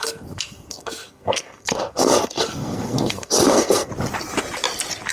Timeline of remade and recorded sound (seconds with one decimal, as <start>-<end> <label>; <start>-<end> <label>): 0.0-3.9 remade; 3.9-5.1 recorded